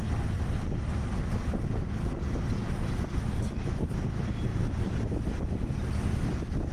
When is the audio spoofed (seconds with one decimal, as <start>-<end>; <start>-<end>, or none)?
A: 4.5-5.7

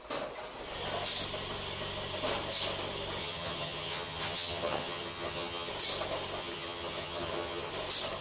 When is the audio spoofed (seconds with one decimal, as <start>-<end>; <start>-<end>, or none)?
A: 3.2-5.7; 6.4-7.7

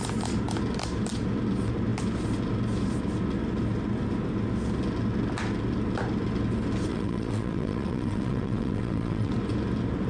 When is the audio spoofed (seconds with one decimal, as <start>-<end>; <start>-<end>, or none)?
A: 6.9-9.3

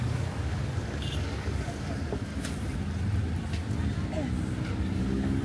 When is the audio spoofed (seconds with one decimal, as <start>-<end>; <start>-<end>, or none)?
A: 0.0-2.3; 5.0-5.4

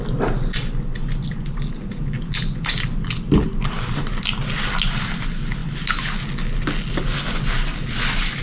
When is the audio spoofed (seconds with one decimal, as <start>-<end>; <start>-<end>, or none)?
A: none

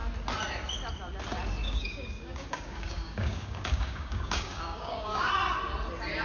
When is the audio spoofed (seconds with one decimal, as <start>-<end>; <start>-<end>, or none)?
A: 1.6-5.3

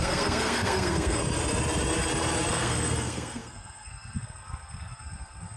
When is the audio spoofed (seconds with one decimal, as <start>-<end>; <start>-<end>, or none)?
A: 0.0-1.2; 2.5-5.6

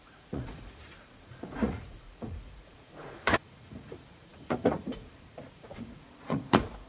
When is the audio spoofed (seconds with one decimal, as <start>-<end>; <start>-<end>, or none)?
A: 0.0-6.9